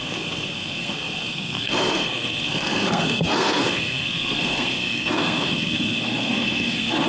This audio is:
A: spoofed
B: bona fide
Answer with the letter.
A